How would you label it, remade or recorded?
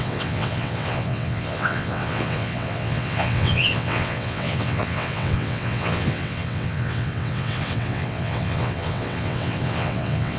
remade